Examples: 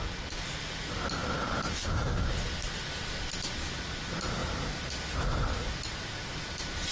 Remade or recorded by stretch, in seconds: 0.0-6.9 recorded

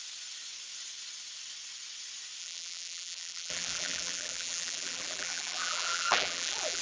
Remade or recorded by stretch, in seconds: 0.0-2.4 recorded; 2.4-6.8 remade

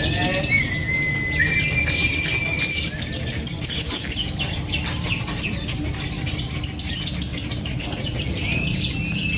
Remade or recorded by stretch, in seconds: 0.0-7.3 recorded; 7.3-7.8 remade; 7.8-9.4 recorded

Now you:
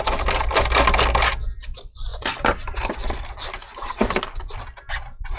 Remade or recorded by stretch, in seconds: 0.0-5.4 recorded